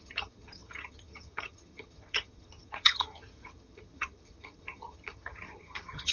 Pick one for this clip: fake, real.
fake